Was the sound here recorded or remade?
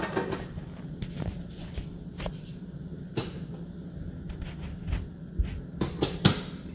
recorded